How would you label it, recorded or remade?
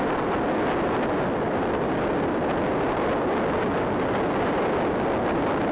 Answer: recorded